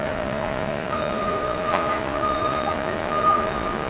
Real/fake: fake